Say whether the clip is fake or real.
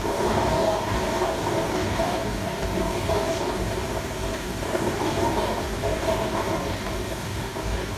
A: fake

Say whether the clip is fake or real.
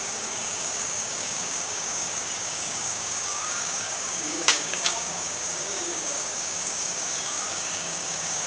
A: fake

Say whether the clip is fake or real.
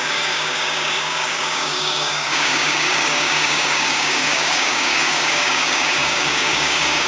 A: fake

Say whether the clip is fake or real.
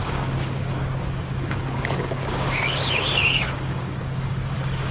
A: fake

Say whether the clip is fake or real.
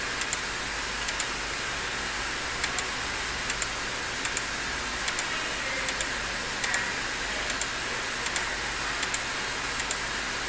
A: real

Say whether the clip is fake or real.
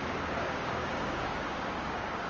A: fake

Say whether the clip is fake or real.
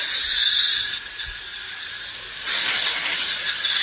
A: real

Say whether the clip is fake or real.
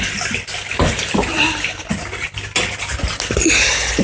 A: real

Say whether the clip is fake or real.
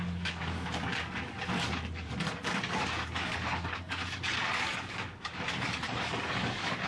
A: fake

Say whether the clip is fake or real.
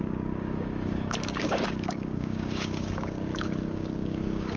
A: fake